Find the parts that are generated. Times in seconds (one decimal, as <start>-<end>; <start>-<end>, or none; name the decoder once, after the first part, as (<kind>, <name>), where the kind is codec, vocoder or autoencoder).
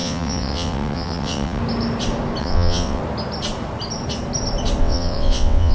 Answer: 0.0-1.6 (vocoder, WaveNeXt); 2.4-3.0; 4.8-5.7